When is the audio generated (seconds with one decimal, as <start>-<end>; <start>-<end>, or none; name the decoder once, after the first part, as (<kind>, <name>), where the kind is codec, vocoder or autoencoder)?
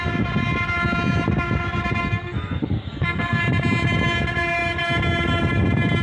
2.0-3.4 (codec, SNAC)